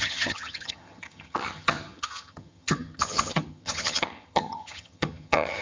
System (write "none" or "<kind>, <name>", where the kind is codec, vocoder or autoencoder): vocoder, HiFi-GAN